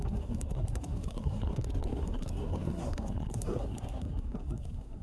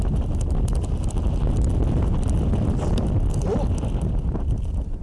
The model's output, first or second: first